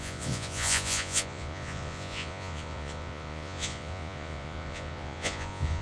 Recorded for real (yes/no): no